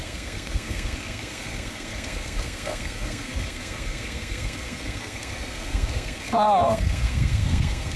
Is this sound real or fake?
fake